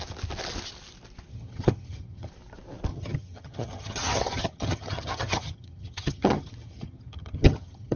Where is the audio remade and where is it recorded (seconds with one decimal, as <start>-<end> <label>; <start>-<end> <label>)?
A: 0.0-1.3 recorded; 1.3-2.3 remade; 2.3-2.9 recorded; 2.9-8.0 remade